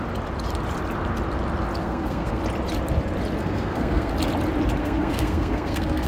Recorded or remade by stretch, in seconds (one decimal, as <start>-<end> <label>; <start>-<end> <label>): 0.0-1.8 recorded; 1.8-2.4 remade; 2.4-3.4 recorded; 3.4-4.1 remade; 4.1-4.8 recorded; 4.8-6.1 remade